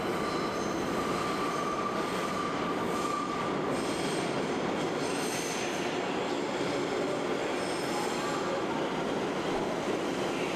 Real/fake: real